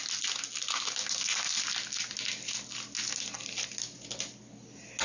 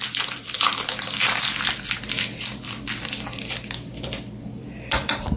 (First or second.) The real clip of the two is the first